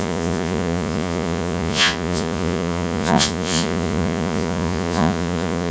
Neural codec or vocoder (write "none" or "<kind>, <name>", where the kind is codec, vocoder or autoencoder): vocoder, Vocos